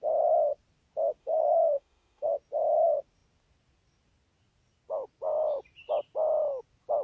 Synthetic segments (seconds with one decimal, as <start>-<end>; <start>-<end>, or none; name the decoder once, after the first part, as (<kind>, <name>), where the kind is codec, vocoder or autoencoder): 1.2-2.3 (autoencoder, DAC-VAE)